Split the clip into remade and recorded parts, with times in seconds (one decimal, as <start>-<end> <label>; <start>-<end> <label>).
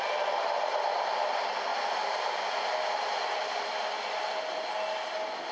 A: 0.0-5.5 recorded